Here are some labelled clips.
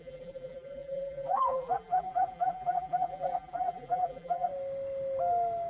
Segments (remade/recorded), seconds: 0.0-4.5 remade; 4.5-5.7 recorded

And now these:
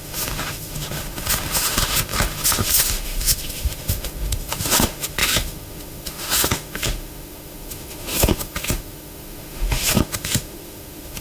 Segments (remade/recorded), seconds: 0.0-11.2 remade

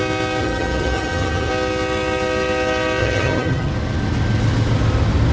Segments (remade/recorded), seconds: 0.0-0.4 recorded; 0.4-1.5 remade; 1.5-3.0 recorded; 3.0-3.7 remade; 3.7-5.3 recorded

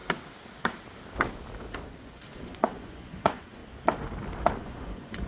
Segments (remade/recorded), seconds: 0.0-1.9 recorded; 1.9-3.6 remade; 3.6-4.6 recorded; 4.6-5.3 remade

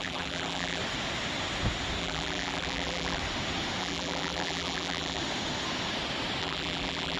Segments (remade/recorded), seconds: 0.0-0.8 remade; 0.8-2.0 recorded; 2.0-3.2 remade; 3.2-3.8 recorded; 3.8-5.2 remade; 5.2-6.4 recorded; 6.4-7.2 remade

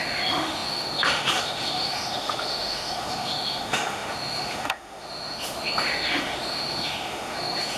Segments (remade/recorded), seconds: 0.0-7.8 remade